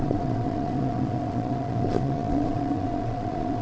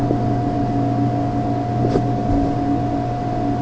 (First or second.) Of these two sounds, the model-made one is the first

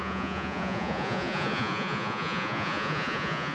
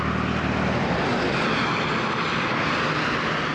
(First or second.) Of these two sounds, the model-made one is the first